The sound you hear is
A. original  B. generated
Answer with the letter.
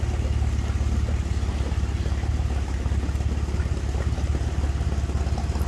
A